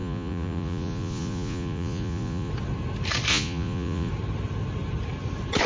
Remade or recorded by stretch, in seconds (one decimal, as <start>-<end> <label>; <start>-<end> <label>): 0.0-2.5 remade; 2.5-3.3 recorded; 3.3-4.1 remade; 4.1-5.7 recorded